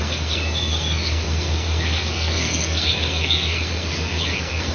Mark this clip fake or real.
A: fake